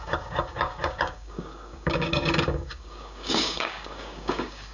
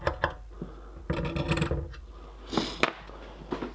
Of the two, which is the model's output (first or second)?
first